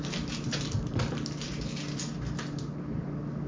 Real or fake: real